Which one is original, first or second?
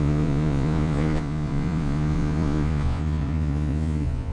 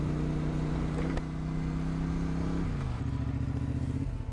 second